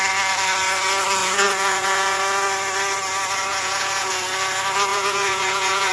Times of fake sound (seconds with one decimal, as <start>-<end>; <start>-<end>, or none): 1.2-2.2; 3.5-4.1; 4.9-5.9